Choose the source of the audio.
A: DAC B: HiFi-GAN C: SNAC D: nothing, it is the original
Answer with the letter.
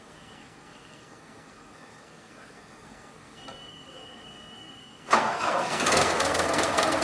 C